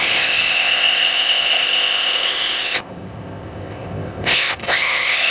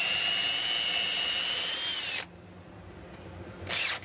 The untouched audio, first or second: second